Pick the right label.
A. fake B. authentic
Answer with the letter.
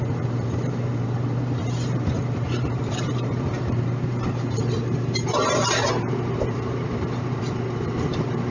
A